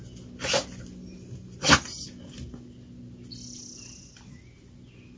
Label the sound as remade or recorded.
recorded